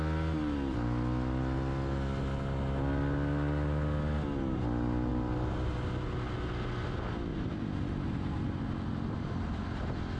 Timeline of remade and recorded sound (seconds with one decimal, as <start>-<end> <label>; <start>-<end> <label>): 0.0-5.1 recorded; 5.1-5.7 remade; 5.7-7.3 recorded; 7.3-9.6 remade; 9.6-10.2 recorded